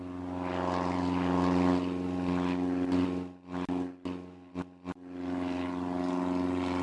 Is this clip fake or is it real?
real